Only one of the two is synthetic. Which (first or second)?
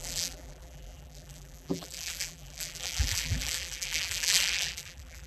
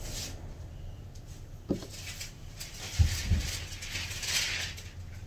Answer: first